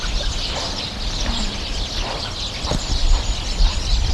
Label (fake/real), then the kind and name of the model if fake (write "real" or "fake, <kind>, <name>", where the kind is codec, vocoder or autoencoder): fake, vocoder, BigVGAN v2